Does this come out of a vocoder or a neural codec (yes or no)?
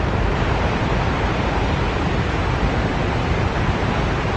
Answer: yes